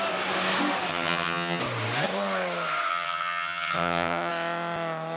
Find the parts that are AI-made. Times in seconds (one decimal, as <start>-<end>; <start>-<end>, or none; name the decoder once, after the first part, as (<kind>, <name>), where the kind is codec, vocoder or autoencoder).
0.9-1.6 (vocoder, HiFi-GAN); 2.9-4.3